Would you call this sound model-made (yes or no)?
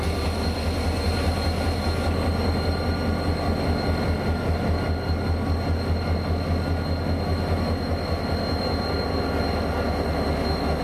no